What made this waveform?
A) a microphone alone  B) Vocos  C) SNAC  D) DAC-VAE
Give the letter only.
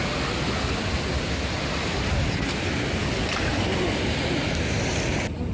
A